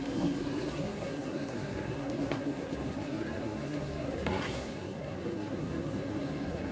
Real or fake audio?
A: fake